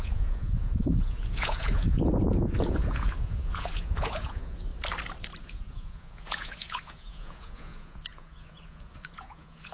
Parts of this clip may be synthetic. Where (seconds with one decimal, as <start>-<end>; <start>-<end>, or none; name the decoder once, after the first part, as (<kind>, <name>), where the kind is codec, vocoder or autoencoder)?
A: 0.0-4.7 (vocoder, Vocos); 5.4-9.7